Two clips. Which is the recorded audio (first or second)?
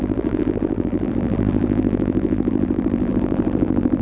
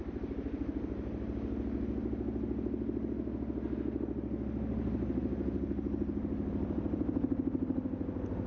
second